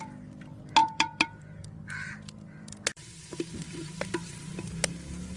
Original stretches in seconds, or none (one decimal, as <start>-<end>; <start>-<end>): 0.0-0.8; 4.0-5.4